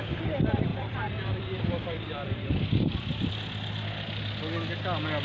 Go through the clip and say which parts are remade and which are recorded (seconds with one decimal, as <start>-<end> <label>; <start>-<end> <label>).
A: 0.0-0.7 recorded; 0.7-3.3 remade; 3.3-5.2 recorded